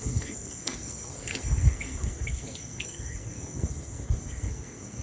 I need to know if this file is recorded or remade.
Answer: remade